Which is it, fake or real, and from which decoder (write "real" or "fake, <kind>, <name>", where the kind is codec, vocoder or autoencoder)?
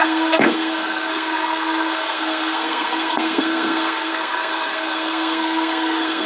fake, codec, SNAC